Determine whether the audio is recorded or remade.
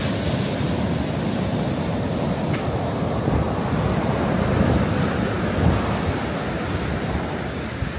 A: recorded